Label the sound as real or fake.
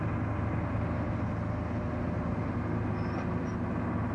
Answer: real